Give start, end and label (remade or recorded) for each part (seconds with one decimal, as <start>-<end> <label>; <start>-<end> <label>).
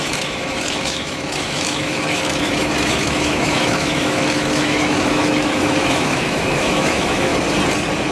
0.0-7.3 remade; 7.3-8.1 recorded